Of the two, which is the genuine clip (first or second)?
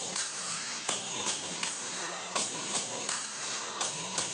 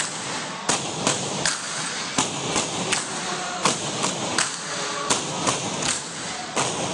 second